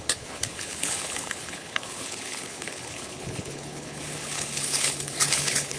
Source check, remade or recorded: remade